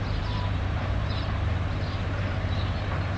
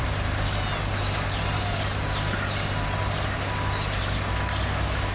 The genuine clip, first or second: second